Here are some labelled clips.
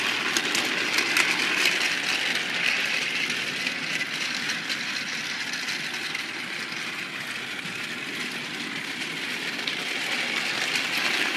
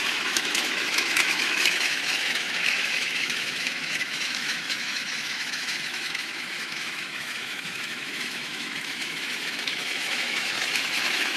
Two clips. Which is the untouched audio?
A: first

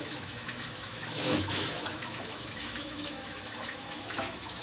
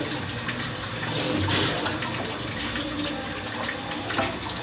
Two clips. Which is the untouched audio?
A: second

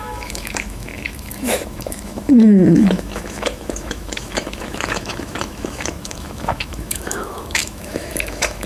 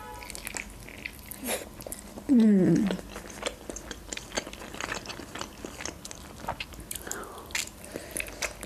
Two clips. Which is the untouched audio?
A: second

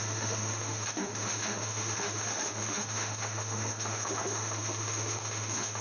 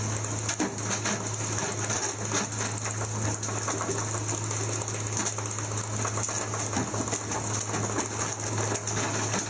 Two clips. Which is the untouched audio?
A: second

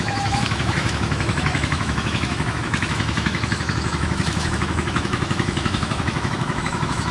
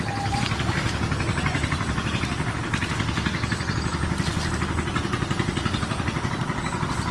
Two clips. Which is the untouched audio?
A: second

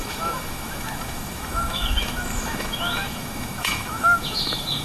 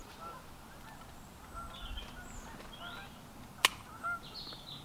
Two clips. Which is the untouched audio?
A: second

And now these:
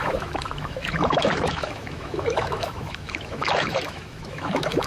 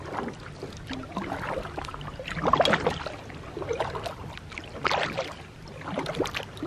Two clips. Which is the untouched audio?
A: second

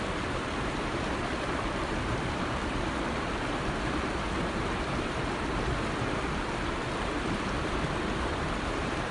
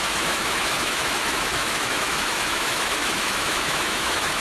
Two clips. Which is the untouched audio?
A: first